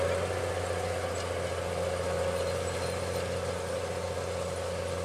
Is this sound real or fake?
real